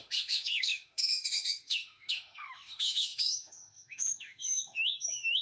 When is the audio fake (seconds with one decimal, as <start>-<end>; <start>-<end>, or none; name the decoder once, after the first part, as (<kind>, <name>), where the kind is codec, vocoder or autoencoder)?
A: 0.0-5.4 (autoencoder, DAC-VAE)